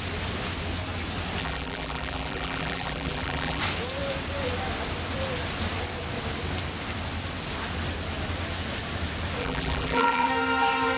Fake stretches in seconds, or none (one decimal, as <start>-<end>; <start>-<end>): 1.4-3.6; 9.4-10.3